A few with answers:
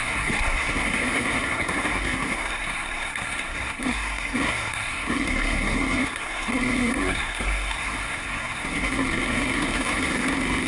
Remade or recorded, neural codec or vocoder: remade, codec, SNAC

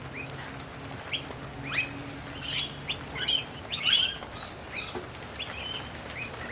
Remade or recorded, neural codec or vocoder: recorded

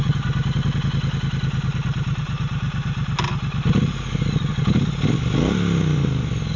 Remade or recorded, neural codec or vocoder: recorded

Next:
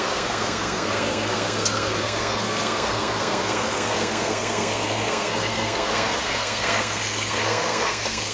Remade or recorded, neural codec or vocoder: remade, codec, SNAC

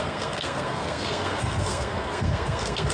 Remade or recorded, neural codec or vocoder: remade, codec, SNAC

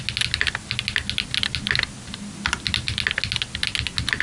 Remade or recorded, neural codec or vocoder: recorded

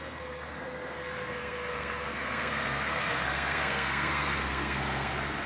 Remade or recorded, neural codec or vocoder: remade, codec, SNAC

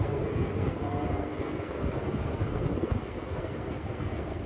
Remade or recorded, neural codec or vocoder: remade, codec, SNAC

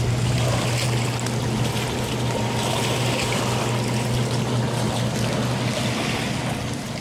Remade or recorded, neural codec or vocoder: recorded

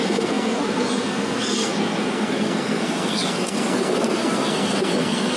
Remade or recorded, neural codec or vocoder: remade, codec, SNAC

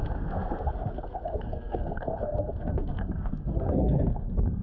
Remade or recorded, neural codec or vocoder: remade, codec, SNAC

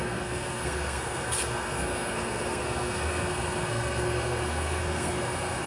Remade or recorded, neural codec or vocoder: remade, codec, SNAC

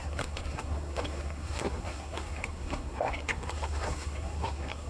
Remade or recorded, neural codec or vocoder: remade, codec, SNAC